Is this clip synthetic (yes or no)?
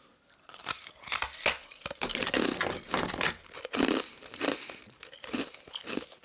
no